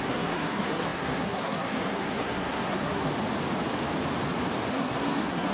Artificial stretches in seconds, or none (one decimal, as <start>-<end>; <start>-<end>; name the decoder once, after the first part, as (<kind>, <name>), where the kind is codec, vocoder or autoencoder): 0.0-3.1 (codec, SNAC); 4.7-5.5